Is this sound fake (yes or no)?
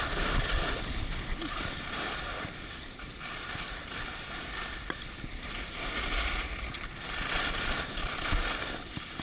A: no